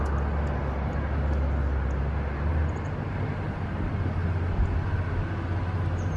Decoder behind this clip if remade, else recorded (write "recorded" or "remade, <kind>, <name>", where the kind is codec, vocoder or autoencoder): recorded